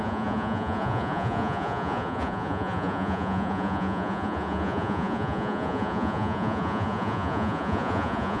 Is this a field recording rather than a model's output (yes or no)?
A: no